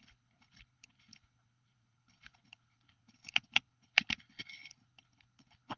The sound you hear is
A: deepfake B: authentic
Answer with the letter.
A